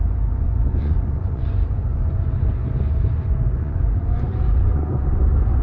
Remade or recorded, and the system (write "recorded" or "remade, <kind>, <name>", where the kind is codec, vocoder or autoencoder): remade, vocoder, Vocos